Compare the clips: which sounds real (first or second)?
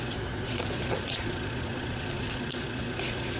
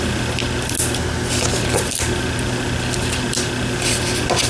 second